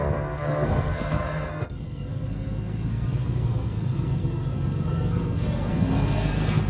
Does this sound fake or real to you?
fake